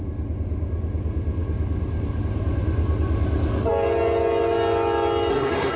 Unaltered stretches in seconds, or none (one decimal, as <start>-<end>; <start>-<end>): 0.0-5.3